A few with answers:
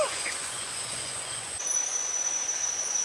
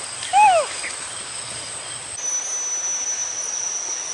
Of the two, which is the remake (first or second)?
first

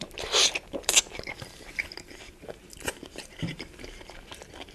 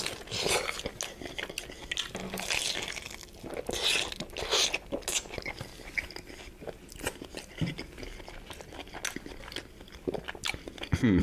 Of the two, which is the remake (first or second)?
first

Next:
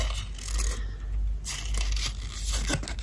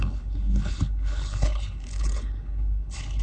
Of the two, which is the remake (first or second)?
second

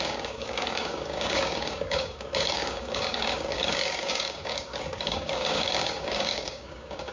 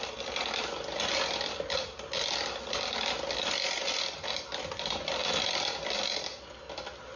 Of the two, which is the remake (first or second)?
first